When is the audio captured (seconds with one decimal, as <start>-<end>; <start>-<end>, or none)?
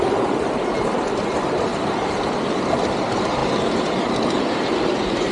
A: none